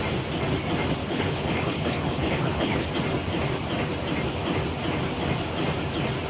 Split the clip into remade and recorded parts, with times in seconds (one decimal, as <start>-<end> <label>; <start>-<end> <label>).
0.0-1.0 recorded; 1.0-2.9 remade; 2.9-6.3 recorded

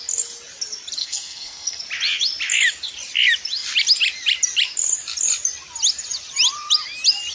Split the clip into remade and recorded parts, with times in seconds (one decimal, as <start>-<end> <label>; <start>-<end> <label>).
0.0-1.0 recorded; 1.0-1.8 remade; 1.8-7.3 recorded

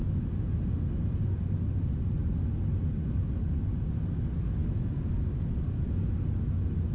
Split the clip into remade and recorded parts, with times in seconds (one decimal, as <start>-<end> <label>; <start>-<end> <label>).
0.0-6.9 recorded